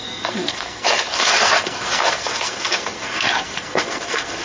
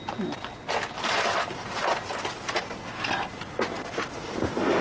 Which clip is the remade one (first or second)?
first